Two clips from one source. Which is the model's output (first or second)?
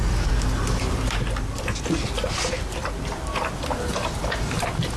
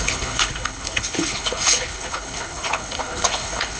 second